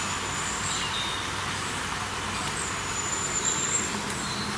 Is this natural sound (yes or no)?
yes